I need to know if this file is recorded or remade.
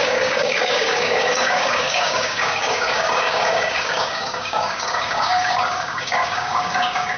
remade